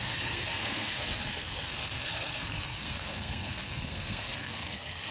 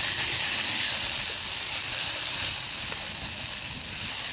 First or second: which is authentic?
second